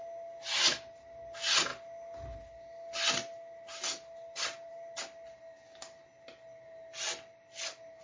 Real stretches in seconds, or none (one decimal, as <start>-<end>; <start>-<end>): 0.0-8.0